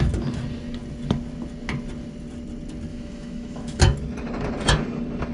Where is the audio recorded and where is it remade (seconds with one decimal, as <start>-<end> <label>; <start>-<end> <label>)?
0.0-2.9 recorded; 2.9-3.8 remade; 3.8-5.3 recorded